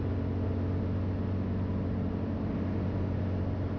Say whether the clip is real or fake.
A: real